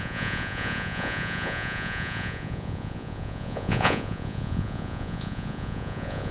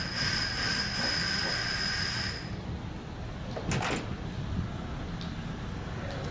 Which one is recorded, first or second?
second